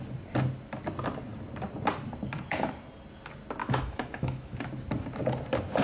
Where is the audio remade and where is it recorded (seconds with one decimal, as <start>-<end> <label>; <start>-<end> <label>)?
0.0-3.6 recorded; 3.6-4.6 remade; 4.6-5.8 recorded